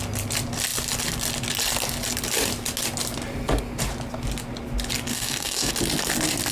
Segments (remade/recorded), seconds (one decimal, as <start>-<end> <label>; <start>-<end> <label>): 0.0-5.1 recorded; 5.1-5.7 remade; 5.7-6.5 recorded